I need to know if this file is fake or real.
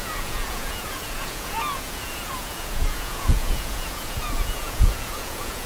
fake